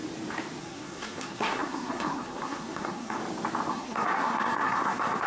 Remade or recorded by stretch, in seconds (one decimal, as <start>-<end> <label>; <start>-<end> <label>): 0.0-0.6 recorded; 0.6-3.2 remade; 3.2-3.7 recorded; 3.7-5.3 remade